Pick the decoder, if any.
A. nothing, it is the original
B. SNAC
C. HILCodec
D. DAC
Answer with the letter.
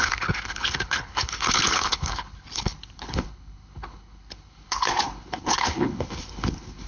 C